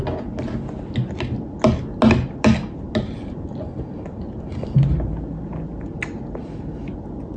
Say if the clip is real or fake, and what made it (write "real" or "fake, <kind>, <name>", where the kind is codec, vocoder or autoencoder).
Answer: real